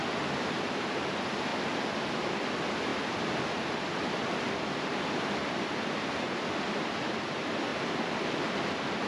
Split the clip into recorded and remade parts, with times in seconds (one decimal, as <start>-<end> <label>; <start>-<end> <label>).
0.0-1.5 remade; 1.5-2.1 recorded; 2.1-9.1 remade